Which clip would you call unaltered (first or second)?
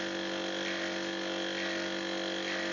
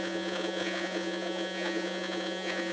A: first